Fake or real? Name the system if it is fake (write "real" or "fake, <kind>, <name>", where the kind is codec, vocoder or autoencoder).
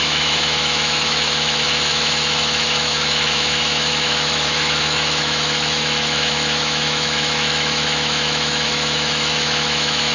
fake, autoencoder, DAC-VAE